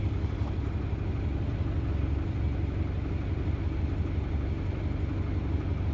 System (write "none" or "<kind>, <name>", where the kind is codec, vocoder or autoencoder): none